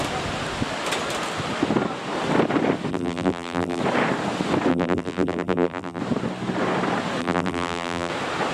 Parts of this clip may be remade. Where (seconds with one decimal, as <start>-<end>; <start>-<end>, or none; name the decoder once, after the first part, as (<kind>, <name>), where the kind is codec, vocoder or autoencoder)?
2.9-3.8 (vocoder, BigVGAN v2); 4.7-6.0; 7.2-8.1